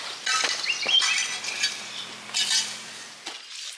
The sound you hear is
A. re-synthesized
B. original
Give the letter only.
B